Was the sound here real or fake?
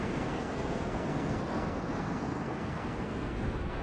fake